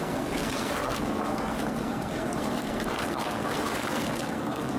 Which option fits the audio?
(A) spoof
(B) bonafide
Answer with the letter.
A